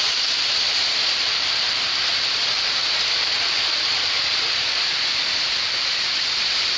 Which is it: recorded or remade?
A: recorded